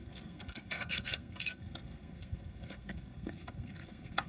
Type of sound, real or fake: fake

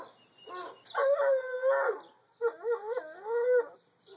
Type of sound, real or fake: real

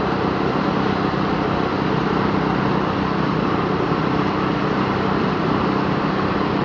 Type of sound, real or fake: real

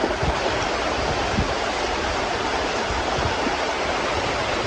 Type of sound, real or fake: real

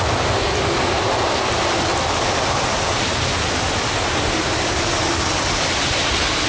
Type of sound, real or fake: real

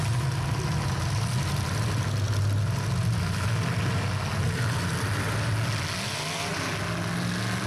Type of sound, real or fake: real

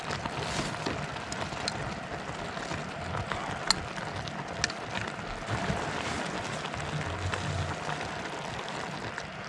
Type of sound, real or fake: real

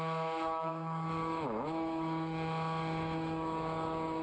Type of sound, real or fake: fake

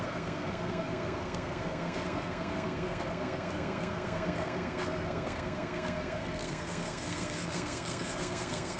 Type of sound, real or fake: fake